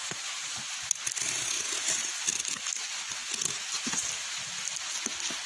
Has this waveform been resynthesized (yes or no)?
no